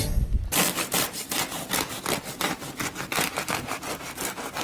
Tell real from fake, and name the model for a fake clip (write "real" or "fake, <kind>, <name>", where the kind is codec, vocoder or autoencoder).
real